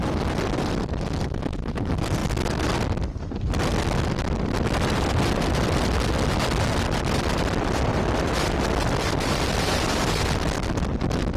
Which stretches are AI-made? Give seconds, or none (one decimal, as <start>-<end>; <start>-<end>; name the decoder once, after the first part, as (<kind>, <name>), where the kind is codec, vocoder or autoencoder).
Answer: none